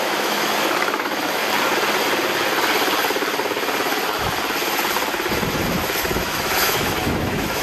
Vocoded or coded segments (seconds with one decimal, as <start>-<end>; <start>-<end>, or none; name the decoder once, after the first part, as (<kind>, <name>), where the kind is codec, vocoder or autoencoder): 0.0-1.4 (autoencoder, DAC-VAE); 6.0-7.6